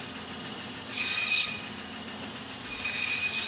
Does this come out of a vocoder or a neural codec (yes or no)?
no